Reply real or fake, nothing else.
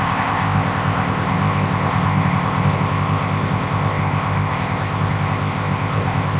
fake